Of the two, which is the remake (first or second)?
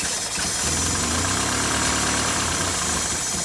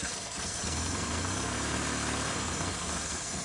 second